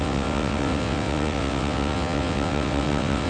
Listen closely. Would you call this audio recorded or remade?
remade